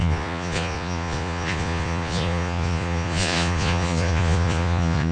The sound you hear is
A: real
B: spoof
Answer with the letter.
B